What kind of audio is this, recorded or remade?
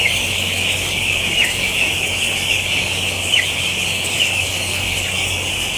remade